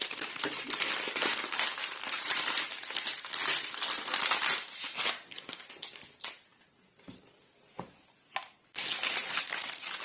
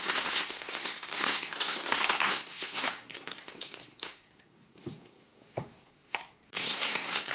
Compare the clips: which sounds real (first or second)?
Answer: first